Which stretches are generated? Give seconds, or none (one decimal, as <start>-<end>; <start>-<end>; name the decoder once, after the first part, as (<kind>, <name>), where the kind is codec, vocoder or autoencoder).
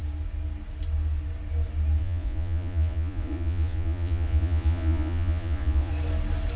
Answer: 2.0-5.9 (vocoder, Vocos)